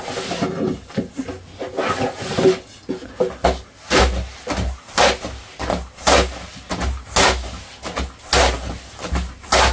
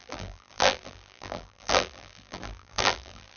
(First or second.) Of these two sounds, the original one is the first